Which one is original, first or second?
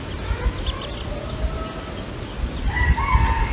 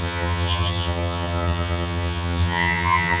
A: first